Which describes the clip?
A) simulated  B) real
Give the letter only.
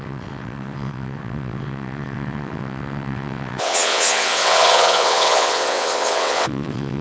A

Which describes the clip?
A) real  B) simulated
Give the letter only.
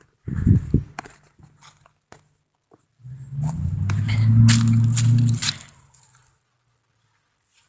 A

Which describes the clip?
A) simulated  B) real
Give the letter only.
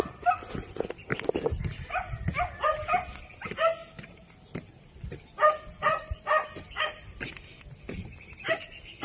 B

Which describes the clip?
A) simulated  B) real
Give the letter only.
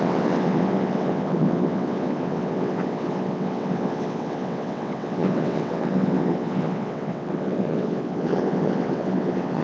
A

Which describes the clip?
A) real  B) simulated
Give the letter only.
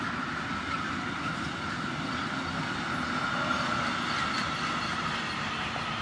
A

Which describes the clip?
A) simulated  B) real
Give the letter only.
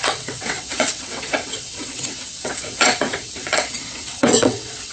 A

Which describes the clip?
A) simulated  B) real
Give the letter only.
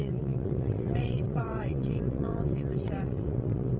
A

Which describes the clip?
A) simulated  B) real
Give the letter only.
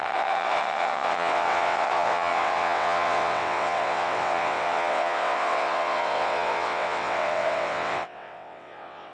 A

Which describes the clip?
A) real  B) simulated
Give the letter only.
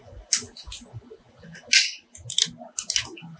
A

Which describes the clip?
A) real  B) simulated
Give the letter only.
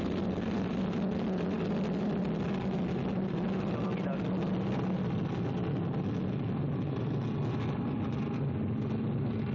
A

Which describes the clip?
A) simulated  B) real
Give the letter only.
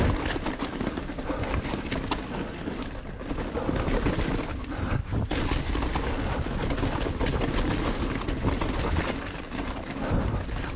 B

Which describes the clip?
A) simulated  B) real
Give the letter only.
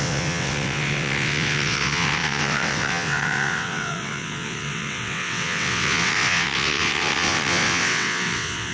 A